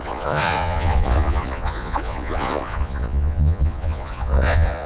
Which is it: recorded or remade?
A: remade